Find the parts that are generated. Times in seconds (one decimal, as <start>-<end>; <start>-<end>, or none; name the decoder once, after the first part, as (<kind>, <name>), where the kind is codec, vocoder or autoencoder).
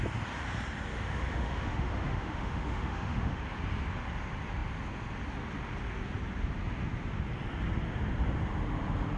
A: 0.9-3.4 (autoencoder, DAC-VAE)